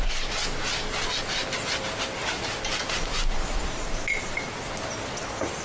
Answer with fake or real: real